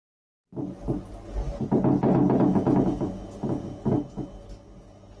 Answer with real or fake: real